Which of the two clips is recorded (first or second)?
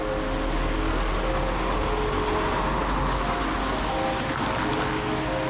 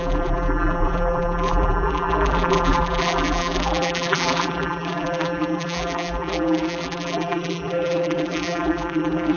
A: first